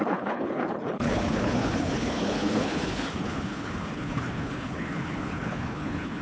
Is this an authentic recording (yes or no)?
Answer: no